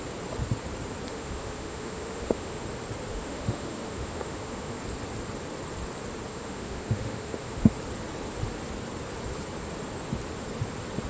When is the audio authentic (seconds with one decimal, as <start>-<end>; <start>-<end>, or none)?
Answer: 0.0-1.1; 2.6-3.1; 4.8-6.3; 7.7-11.1